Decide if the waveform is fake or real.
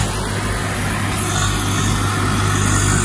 real